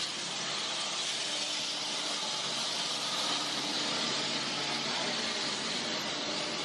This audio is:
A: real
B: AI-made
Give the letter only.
A